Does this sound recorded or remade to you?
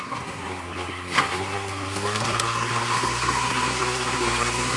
remade